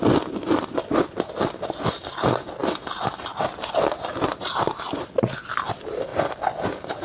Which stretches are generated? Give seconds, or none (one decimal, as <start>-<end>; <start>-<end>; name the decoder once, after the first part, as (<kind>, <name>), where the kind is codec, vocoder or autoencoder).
none